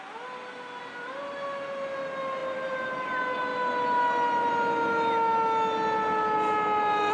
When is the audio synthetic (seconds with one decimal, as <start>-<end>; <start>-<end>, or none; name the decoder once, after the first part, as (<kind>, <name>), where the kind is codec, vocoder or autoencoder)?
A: 2.4-2.9 (vocoder, BigVGAN v2)